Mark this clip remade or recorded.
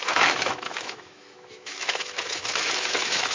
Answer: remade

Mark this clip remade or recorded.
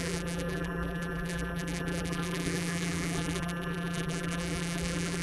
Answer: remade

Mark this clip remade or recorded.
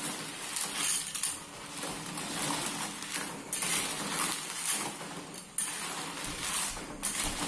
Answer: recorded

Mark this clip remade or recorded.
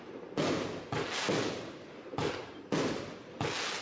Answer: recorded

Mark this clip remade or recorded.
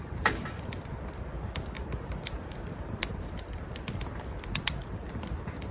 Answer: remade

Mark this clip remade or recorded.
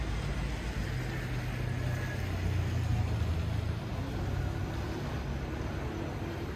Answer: recorded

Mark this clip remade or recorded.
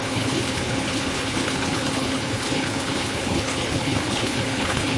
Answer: remade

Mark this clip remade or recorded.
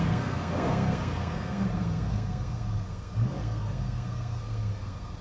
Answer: remade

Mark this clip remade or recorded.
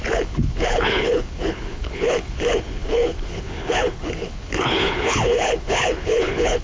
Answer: remade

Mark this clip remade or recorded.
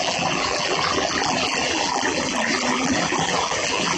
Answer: remade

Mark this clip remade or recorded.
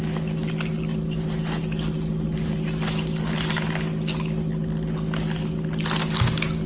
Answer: recorded